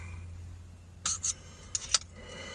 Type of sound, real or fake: real